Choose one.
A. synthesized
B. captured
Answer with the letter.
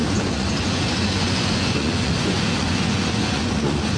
A